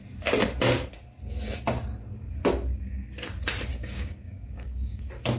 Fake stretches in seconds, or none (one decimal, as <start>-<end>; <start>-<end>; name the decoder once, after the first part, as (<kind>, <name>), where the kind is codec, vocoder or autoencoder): 3.7-5.0 (codec, DAC)